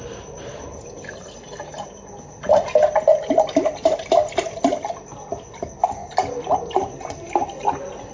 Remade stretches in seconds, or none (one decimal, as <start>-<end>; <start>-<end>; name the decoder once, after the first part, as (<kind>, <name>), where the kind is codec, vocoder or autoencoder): none